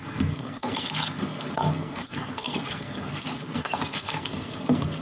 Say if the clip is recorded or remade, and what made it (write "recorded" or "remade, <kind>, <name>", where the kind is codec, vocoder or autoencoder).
remade, codec, SNAC